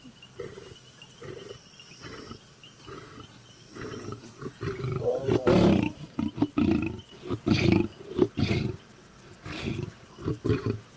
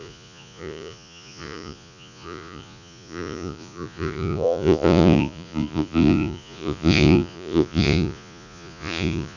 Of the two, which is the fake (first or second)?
second